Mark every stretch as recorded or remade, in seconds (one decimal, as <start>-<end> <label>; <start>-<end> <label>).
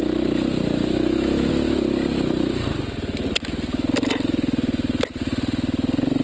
0.0-0.8 recorded; 0.8-1.5 remade; 1.5-6.2 recorded